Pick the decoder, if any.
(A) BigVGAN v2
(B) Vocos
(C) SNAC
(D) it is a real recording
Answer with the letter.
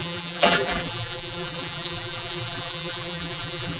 A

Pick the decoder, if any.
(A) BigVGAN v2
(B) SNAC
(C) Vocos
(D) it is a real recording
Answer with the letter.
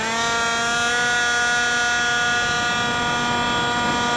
D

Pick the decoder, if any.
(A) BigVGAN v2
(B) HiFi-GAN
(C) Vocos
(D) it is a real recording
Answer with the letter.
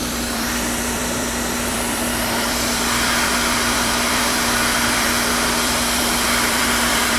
A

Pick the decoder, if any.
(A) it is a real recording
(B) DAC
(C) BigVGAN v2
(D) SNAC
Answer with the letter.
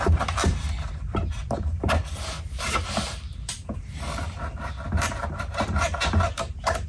C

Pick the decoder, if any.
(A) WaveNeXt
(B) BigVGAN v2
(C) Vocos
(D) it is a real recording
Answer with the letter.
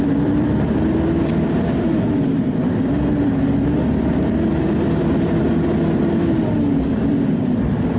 B